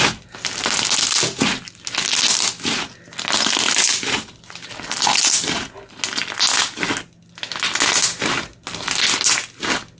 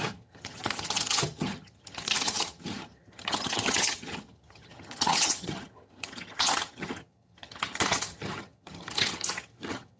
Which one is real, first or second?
first